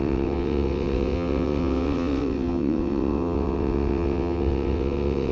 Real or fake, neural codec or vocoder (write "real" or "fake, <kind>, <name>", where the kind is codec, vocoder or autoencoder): fake, vocoder, WaveNeXt